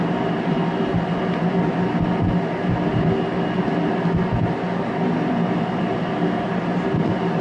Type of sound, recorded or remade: recorded